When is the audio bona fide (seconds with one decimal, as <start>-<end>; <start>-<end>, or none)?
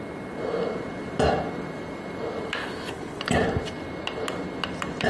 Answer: 0.0-2.6; 3.2-5.1